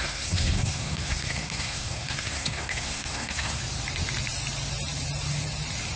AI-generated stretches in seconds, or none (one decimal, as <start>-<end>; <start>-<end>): 0.0-3.6